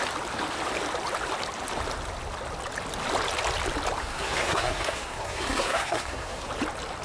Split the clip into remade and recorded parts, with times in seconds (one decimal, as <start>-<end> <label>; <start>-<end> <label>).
0.0-4.0 recorded; 4.0-6.5 remade; 6.5-7.0 recorded